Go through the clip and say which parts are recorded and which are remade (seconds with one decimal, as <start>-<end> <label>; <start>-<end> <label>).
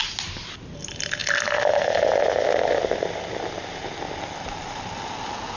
0.0-5.6 recorded